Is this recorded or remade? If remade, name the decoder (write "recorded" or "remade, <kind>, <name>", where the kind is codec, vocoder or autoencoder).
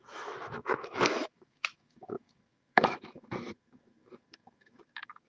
remade, autoencoder, DAC-VAE